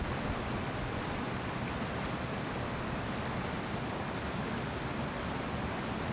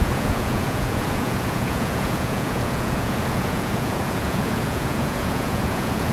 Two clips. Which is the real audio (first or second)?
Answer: first